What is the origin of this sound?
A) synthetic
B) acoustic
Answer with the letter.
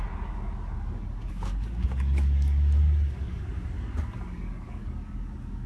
A